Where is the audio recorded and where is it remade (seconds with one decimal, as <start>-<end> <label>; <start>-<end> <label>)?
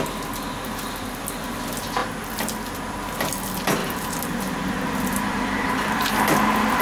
0.0-3.8 recorded; 3.8-6.1 remade; 6.1-6.8 recorded